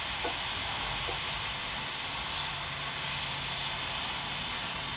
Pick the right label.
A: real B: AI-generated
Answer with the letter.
A